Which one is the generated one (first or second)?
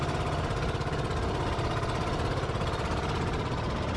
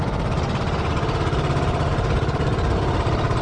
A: second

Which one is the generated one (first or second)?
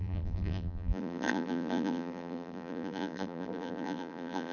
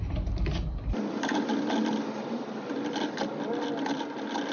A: first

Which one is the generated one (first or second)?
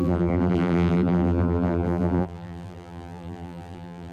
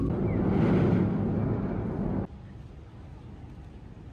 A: first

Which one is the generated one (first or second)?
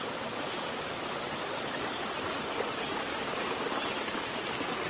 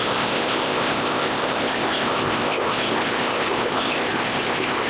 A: second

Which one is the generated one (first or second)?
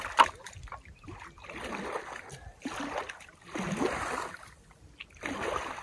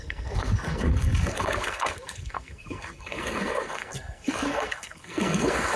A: second